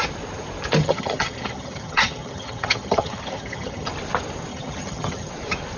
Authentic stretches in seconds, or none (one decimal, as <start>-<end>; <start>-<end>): 0.0-0.8; 3.9-4.5; 5.3-5.8